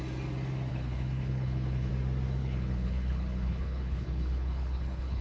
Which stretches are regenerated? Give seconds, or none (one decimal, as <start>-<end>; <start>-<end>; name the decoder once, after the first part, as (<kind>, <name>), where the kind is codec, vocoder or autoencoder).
0.7-1.9 (codec, HILCodec); 2.4-5.2